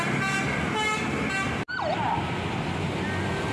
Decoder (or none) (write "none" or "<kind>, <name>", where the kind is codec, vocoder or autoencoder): none